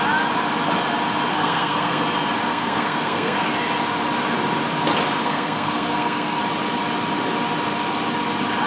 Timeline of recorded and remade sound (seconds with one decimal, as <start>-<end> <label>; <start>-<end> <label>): 0.0-1.3 recorded; 1.3-2.0 remade; 2.0-2.5 recorded; 2.5-3.5 remade; 3.5-5.2 recorded; 5.2-6.4 remade; 6.4-8.7 recorded